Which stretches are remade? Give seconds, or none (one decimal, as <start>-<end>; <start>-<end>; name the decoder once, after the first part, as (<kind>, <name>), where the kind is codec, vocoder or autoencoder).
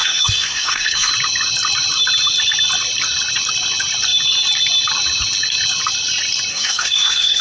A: 0.0-1.1 (codec, SNAC); 6.5-7.4